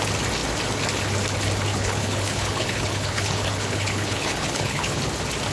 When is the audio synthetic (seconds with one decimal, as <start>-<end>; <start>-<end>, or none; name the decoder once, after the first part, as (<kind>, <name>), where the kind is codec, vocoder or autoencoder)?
1.7-5.0 (codec, HILCodec)

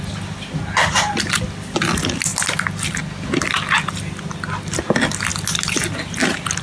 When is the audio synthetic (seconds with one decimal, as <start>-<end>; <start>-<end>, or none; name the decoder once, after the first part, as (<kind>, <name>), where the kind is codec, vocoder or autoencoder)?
none

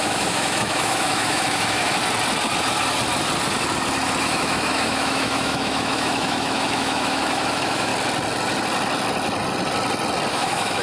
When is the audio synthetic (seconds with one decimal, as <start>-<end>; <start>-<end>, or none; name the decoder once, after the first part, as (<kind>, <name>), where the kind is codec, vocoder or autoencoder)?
0.0-2.0 (autoencoder, DAC-VAE); 4.2-7.9; 10.3-10.8

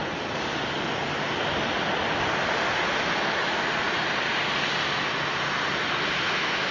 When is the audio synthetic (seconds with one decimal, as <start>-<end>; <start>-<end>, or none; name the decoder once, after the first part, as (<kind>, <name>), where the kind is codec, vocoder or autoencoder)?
3.4-4.1 (vocoder, Vocos)

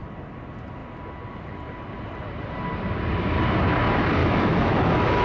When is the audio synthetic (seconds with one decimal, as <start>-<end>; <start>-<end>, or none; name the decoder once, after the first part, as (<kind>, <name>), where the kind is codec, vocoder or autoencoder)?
4.2-5.2 (autoencoder, DAC-VAE)

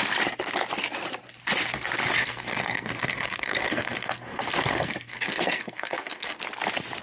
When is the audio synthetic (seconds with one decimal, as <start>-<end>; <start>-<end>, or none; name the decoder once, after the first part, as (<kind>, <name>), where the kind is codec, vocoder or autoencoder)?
2.2-6.4 (codec, SNAC)